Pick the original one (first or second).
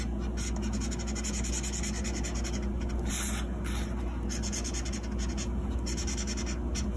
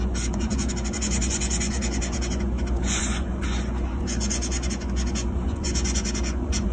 first